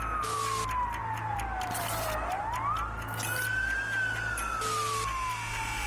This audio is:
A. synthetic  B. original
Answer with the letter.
B